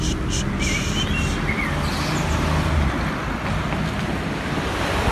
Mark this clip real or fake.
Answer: real